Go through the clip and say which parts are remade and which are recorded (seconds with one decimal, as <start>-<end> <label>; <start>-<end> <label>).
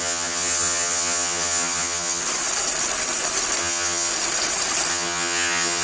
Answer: 0.0-2.2 remade; 2.2-3.6 recorded; 3.6-4.1 remade; 4.1-4.9 recorded; 4.9-5.8 remade